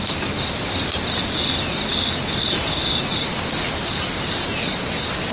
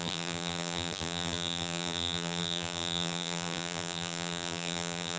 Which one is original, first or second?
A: first